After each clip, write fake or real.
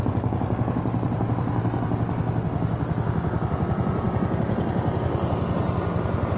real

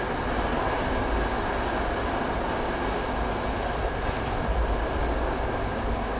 real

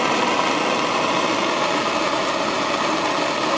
real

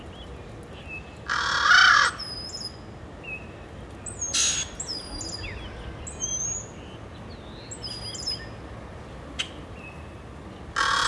real